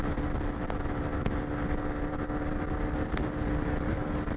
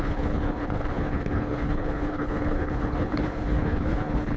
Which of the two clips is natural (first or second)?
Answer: first